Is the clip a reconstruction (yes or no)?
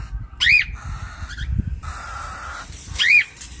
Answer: no